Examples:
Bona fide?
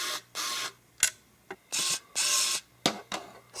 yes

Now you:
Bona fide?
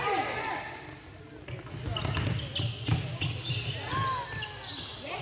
yes